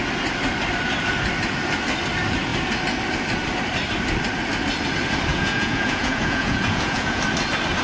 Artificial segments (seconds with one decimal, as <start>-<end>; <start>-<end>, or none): 5.3-7.2